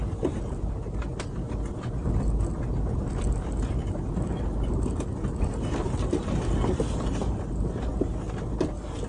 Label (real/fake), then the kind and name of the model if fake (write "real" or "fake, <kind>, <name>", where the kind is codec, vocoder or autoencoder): real